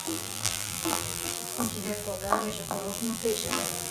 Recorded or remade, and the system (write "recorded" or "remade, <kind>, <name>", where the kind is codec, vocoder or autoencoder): remade, vocoder, BigVGAN v2